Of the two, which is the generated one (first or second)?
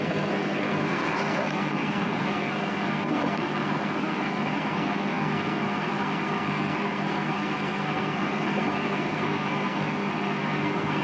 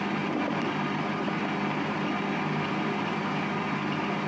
first